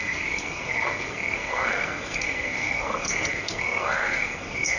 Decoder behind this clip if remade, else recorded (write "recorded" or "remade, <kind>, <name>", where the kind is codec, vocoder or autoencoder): remade, codec, SNAC